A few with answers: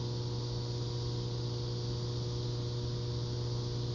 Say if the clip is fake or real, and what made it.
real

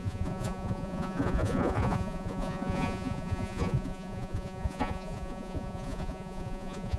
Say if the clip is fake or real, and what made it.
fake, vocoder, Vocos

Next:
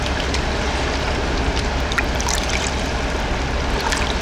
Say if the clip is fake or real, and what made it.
real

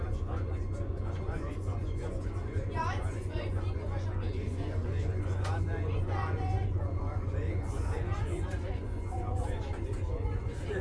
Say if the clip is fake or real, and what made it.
fake, vocoder, Vocos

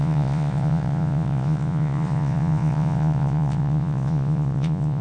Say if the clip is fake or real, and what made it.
fake, vocoder, Vocos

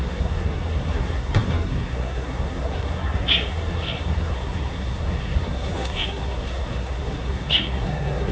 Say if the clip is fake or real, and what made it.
fake, codec, SNAC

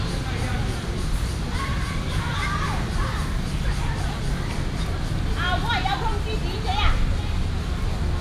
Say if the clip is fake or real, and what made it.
real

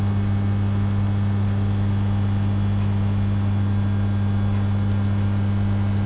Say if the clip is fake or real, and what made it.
real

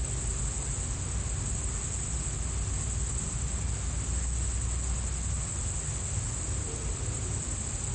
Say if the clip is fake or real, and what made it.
real